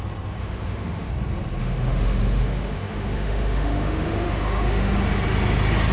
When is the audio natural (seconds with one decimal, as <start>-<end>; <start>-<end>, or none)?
0.0-0.4; 1.1-1.6; 4.9-5.9